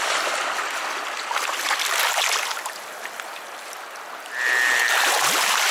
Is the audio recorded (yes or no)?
yes